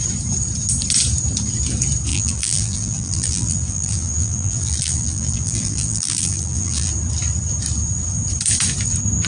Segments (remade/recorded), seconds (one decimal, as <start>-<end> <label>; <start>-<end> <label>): 0.0-2.1 recorded; 2.1-6.9 remade; 6.9-9.3 recorded